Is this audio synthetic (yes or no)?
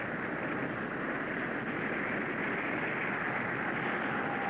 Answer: no